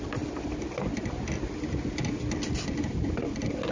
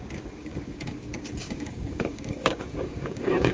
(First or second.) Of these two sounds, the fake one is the second